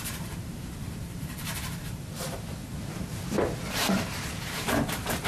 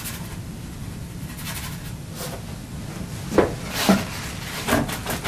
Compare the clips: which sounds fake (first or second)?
first